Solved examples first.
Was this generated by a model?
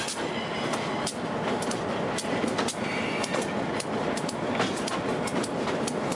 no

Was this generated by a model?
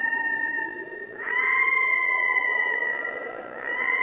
yes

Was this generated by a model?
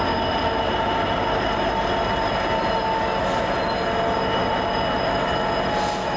no